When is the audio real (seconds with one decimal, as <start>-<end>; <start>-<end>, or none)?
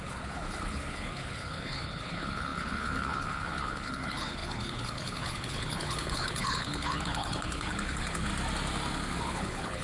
8.3-9.2